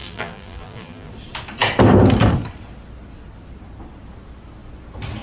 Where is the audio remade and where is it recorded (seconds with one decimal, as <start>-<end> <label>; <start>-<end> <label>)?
0.0-1.1 remade; 1.1-5.2 recorded